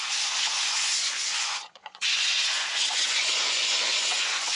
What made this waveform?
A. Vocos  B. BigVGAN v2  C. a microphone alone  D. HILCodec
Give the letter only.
A